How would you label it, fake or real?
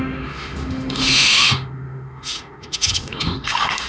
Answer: fake